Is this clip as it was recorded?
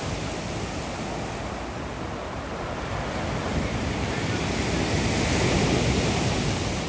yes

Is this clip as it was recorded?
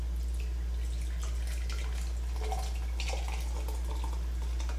yes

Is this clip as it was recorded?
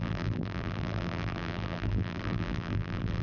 no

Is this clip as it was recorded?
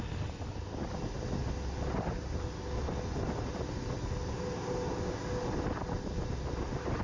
yes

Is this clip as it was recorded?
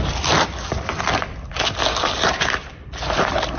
yes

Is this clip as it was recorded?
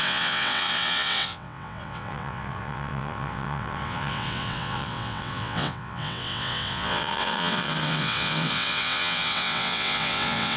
no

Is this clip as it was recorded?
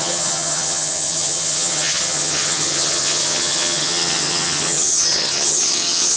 no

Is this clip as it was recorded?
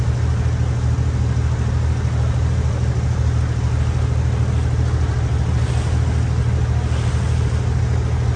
yes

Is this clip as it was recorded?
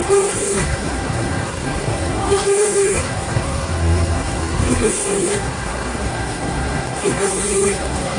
no